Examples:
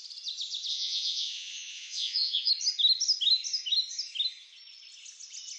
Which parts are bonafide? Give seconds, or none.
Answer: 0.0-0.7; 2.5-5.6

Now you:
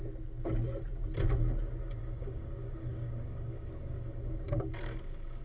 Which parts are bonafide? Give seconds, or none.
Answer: 0.0-2.0

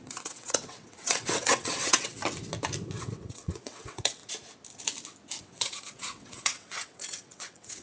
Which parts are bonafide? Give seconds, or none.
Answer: 2.2-3.0; 4.2-5.4

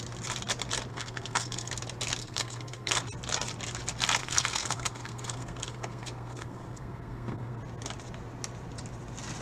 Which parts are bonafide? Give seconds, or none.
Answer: 0.0-0.9; 1.7-2.2; 3.0-4.2; 7.6-9.4